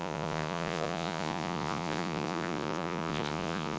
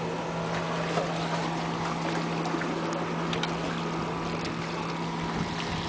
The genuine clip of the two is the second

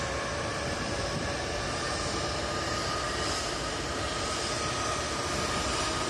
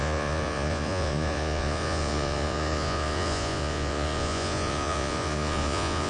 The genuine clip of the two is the first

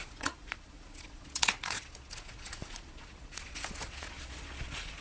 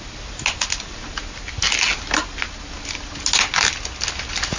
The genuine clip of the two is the second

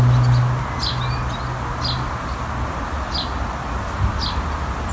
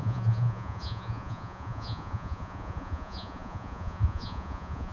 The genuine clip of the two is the first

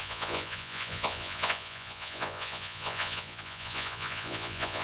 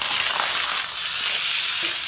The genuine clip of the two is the second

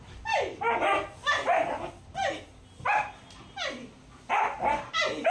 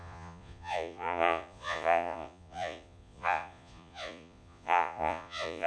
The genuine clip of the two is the first